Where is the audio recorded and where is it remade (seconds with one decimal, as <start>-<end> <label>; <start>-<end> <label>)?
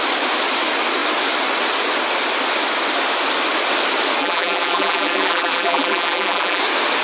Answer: 0.0-4.2 recorded; 4.2-6.6 remade; 6.6-7.0 recorded